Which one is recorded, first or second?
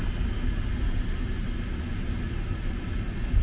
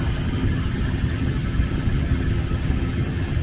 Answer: first